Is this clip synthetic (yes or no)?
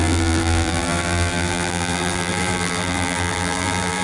yes